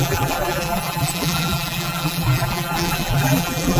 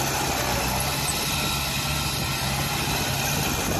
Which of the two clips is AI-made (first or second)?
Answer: first